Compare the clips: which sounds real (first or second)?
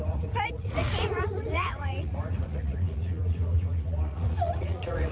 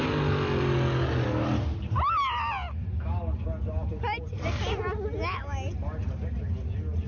second